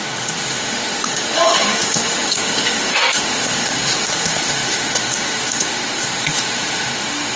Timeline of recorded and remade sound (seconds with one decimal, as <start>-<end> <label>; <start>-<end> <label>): 0.0-7.4 remade